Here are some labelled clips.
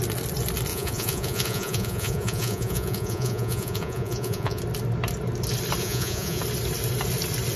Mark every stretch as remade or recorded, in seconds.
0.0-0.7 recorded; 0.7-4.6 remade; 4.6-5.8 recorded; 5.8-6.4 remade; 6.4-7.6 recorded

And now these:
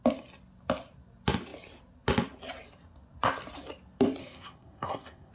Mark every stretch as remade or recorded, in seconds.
0.0-4.2 recorded; 4.2-5.3 remade

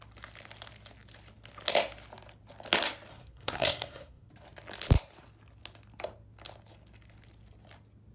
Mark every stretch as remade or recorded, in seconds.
0.0-3.1 recorded; 3.1-4.3 remade; 4.3-8.1 recorded

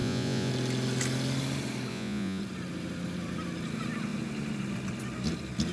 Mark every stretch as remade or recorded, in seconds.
0.0-0.5 remade; 0.5-1.9 recorded; 1.9-2.4 remade; 2.4-5.7 recorded

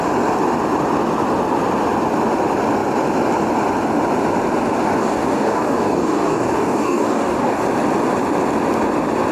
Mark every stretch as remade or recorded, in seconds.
0.0-5.0 recorded; 5.0-7.6 remade; 7.6-9.3 recorded